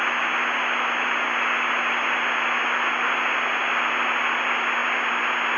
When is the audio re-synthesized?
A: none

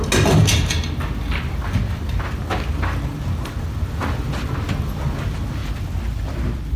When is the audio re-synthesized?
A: none

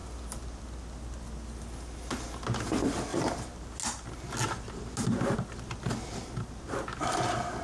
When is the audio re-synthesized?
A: none

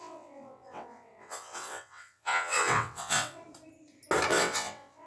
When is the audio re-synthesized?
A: 0.0-3.4; 4.3-5.1

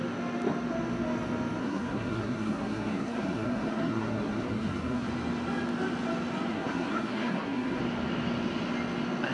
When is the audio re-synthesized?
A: 1.6-5.1; 6.5-7.8